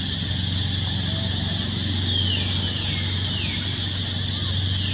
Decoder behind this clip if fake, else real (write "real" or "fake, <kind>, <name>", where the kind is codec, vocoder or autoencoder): real